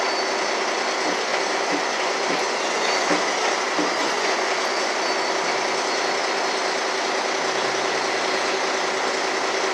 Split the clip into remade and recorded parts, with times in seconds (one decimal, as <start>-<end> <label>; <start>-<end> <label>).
0.0-1.3 recorded; 1.3-3.1 remade; 3.1-4.0 recorded; 4.0-4.9 remade; 4.9-9.7 recorded